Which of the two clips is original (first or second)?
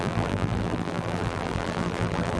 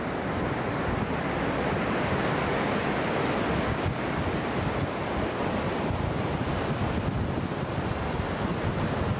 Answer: second